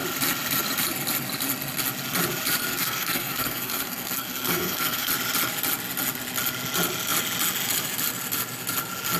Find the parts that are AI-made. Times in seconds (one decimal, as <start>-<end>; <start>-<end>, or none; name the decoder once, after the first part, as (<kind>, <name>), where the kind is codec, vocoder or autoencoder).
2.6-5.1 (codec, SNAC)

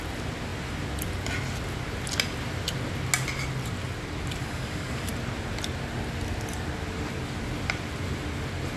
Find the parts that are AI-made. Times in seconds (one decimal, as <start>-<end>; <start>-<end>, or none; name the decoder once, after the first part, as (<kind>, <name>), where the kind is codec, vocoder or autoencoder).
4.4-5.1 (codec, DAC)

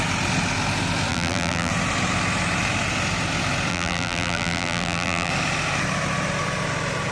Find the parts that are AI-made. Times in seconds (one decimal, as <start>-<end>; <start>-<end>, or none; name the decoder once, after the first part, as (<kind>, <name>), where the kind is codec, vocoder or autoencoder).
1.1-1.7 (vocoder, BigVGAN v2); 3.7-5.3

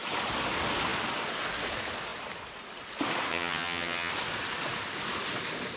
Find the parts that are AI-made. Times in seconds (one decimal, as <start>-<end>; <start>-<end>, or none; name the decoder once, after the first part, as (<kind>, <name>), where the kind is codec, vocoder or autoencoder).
3.3-4.1 (vocoder, HiFi-GAN)

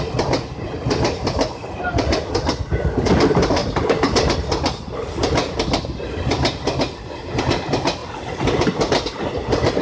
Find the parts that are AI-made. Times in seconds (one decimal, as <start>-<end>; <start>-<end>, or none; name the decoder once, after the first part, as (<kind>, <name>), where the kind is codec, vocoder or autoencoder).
none

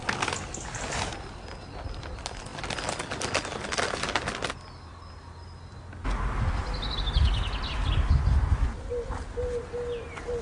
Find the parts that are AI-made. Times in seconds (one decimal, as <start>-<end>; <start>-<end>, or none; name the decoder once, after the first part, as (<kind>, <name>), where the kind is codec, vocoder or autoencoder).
none